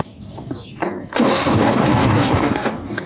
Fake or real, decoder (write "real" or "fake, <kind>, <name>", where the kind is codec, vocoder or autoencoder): fake, codec, DAC